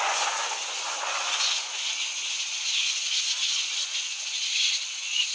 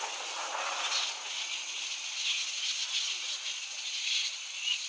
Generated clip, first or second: first